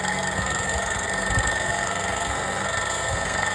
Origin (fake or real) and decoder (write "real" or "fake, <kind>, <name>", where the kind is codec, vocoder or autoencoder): fake, codec, SNAC